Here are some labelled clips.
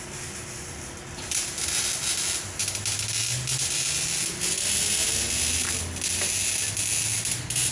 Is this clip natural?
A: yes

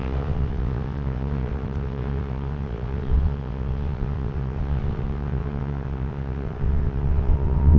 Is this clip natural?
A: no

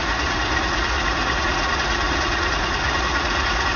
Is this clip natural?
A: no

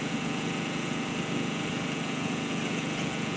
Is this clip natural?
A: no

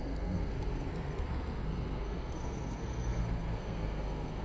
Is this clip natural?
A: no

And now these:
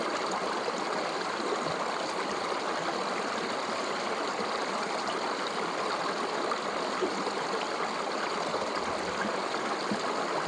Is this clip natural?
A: yes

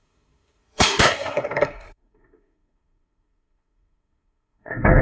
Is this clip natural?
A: no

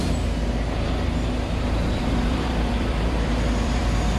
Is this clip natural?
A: no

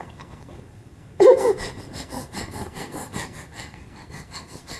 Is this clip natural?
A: no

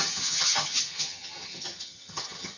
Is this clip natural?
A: no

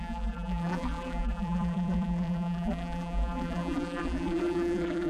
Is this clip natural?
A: no